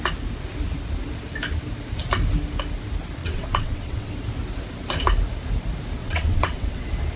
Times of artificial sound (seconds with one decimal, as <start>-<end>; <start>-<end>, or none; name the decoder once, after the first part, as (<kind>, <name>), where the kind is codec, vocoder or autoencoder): 3.2-4.1 (vocoder, WaveNeXt); 6.0-6.8